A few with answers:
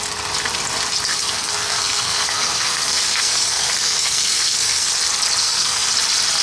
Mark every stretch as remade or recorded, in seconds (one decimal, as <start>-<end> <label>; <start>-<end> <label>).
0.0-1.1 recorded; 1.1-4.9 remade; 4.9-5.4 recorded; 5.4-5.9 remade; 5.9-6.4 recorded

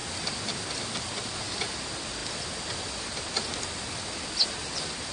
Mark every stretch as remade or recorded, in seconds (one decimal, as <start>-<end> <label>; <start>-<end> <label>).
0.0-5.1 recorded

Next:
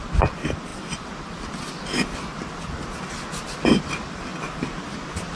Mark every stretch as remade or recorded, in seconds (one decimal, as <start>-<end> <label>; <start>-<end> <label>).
0.0-5.4 recorded

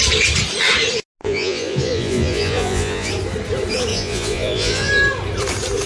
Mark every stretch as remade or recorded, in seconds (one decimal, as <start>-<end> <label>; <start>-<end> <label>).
0.0-1.2 recorded; 1.2-3.1 remade; 3.1-3.9 recorded; 3.9-4.9 remade; 4.9-5.9 recorded

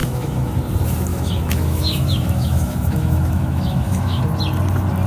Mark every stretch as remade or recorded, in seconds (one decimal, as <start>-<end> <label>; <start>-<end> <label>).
0.0-0.6 remade; 0.6-1.1 recorded; 1.1-4.2 remade; 4.2-5.1 recorded